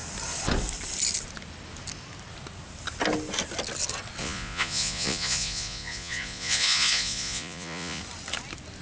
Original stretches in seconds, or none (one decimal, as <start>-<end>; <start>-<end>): 0.0-4.2; 8.0-8.8